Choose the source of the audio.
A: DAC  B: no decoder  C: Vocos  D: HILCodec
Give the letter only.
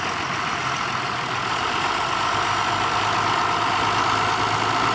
B